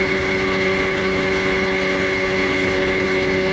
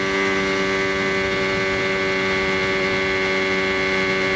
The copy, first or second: first